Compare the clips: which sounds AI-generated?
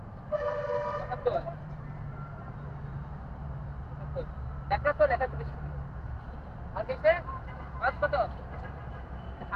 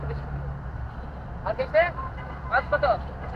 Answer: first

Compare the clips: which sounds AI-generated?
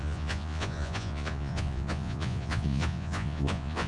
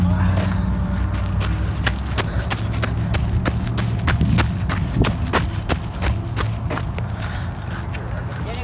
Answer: first